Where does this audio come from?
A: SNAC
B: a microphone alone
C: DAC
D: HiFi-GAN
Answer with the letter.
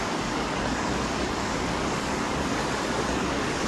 C